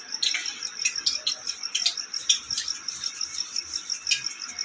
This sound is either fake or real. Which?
real